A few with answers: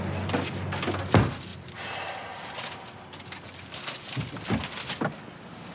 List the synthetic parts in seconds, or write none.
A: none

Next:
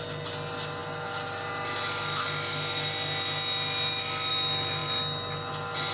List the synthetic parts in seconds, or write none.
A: none

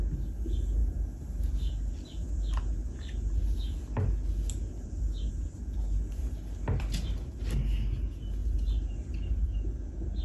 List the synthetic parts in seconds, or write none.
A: none

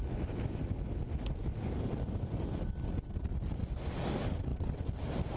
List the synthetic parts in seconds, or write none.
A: 4.5-5.4 (vocoder, BigVGAN v2)

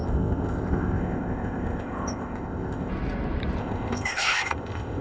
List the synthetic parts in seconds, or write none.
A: 0.0-2.9 (codec, ZipCodec); 3.6-5.0

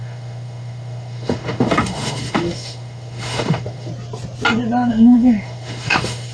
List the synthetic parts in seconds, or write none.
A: 0.0-3.9 (autoencoder, DAC-VAE); 4.9-6.3